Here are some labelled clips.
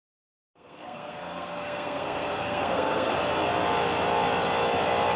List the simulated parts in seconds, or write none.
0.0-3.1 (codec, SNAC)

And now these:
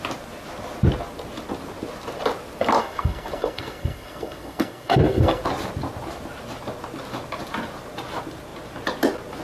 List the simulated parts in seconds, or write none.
2.8-5.4 (codec, SNAC)

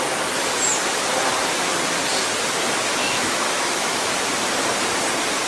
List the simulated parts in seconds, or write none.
3.0-4.1 (autoencoder, DAC-VAE)

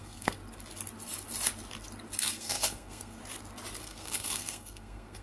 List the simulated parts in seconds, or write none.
0.0-0.4 (codec, SNAC); 2.2-3.2; 3.8-5.2